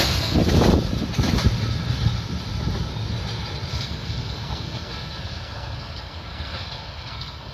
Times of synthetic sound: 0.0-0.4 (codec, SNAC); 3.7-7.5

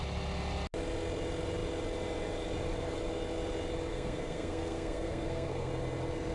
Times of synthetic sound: 3.9-5.7 (codec, SNAC)

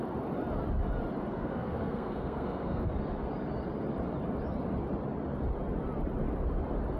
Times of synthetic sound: 1.3-2.9 (codec, SNAC)

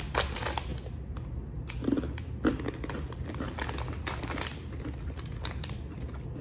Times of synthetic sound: none

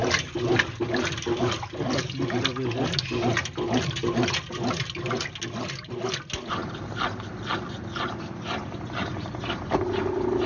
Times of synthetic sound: none